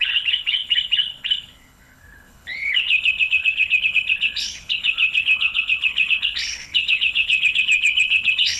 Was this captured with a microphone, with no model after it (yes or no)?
no